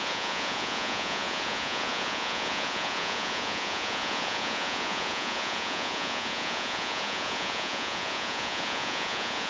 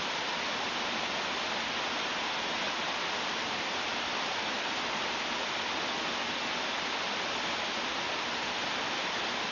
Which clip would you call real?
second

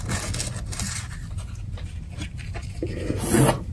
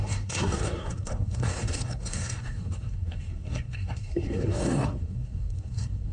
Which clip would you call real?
first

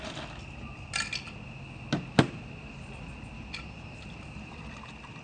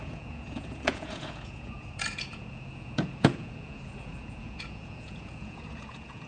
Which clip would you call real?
first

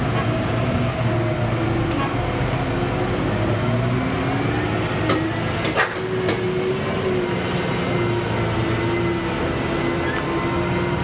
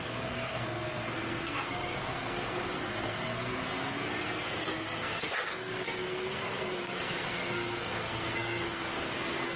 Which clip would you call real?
first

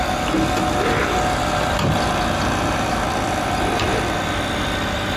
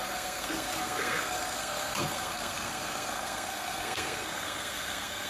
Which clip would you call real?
first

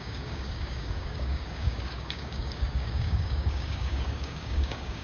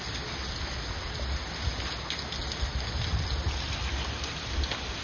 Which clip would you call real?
second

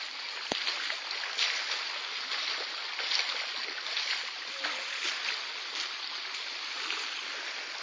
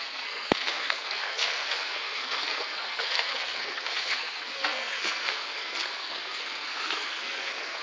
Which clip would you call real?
first